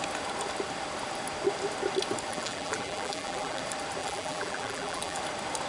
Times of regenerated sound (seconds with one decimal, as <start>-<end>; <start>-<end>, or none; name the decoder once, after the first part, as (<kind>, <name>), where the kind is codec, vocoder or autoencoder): 2.3-3.6 (vocoder, BigVGAN v2); 4.0-5.2